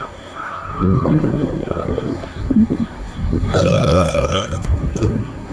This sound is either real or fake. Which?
fake